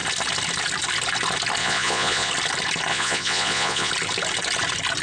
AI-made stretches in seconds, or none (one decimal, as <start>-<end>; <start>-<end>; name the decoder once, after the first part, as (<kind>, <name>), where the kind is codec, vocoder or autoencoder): 1.6-2.3 (vocoder, Vocos); 2.9-3.9